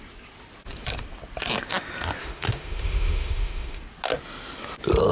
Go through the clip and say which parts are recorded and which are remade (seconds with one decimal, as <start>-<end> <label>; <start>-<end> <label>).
0.0-2.2 recorded; 2.2-3.8 remade; 3.8-5.1 recorded